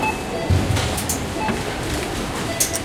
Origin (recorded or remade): recorded